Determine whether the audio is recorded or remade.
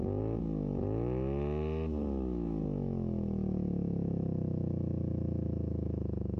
remade